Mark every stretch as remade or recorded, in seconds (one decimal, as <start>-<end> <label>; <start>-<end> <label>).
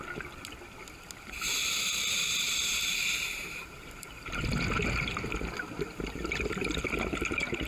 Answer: 0.0-1.6 recorded; 1.6-4.4 remade; 4.4-7.7 recorded